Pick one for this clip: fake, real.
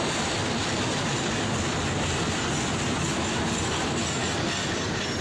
real